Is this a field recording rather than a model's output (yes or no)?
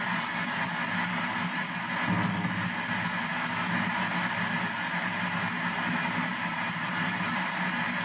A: yes